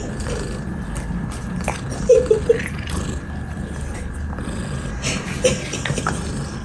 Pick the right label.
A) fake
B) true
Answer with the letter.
B